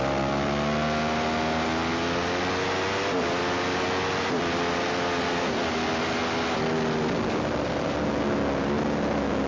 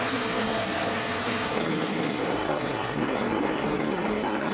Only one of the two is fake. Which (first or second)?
second